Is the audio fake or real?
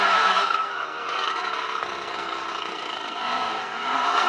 fake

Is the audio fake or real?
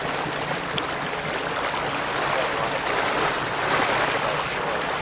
real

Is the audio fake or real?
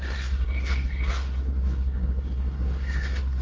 fake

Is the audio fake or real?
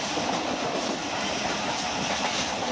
real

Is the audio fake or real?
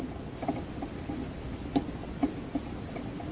real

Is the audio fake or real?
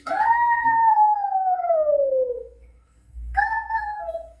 fake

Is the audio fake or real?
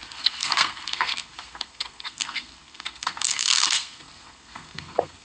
fake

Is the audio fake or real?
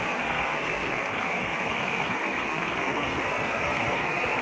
fake